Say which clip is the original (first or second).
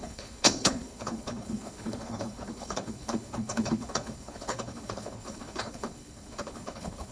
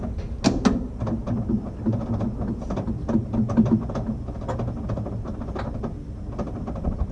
second